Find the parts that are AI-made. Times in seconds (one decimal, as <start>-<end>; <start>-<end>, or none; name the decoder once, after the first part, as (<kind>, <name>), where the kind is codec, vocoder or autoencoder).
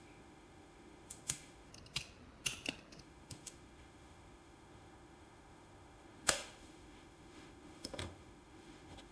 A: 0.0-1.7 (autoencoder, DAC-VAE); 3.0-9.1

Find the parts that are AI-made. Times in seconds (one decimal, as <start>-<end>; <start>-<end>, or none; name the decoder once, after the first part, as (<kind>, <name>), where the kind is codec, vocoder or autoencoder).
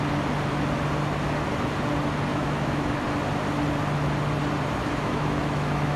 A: 2.3-2.9 (autoencoder, DAC-VAE); 4.8-6.0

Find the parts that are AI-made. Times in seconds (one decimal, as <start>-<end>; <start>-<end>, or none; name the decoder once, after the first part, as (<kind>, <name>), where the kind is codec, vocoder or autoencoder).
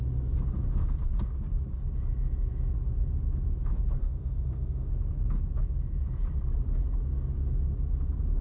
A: 4.0-4.9 (autoencoder, DAC-VAE)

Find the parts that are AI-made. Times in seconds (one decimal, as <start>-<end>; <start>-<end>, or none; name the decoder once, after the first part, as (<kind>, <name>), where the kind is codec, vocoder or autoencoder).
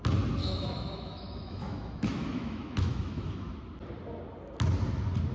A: 0.4-3.6 (autoencoder, DAC-VAE)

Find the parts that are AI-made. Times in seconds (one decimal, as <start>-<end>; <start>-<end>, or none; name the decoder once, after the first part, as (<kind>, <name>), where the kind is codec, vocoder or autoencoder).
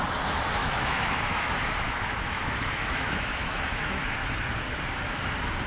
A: 0.6-4.0 (autoencoder, DAC-VAE)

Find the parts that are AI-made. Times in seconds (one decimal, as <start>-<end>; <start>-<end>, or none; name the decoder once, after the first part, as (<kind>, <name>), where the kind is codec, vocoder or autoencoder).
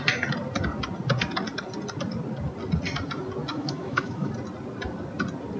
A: 3.5-4.3 (autoencoder, DAC-VAE)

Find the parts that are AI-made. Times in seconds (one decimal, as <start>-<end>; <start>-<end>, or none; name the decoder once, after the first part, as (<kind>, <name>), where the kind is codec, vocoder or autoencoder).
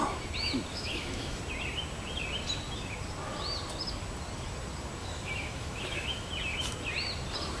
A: 0.7-1.4 (autoencoder, DAC-VAE); 5.0-6.3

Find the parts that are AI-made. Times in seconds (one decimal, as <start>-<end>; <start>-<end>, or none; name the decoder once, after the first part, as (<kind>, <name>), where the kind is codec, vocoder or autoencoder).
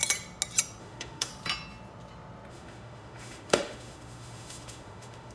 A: 0.8-1.3 (autoencoder, DAC-VAE); 2.5-5.3